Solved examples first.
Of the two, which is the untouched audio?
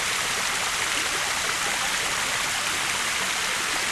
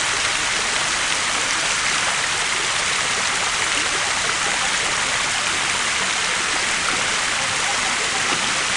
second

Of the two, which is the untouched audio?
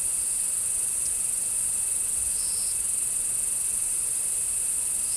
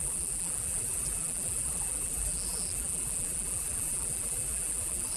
first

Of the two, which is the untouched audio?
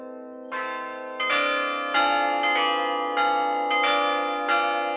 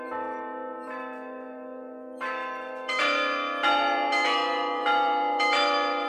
first